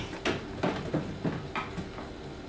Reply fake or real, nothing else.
real